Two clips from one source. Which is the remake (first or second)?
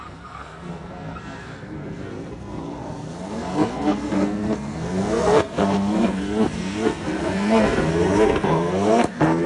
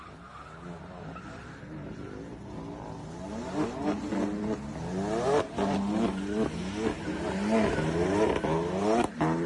first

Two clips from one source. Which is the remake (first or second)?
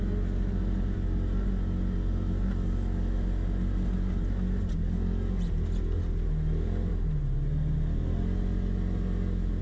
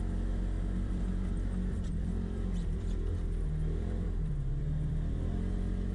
second